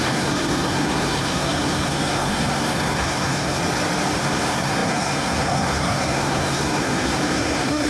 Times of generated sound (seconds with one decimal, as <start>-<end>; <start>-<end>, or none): 0.0-3.6; 4.2-7.9